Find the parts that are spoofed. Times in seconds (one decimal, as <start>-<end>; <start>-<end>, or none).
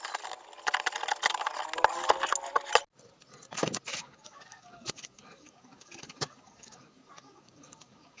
3.9-8.2